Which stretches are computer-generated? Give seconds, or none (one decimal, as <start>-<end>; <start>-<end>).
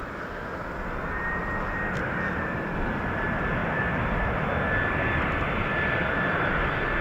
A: none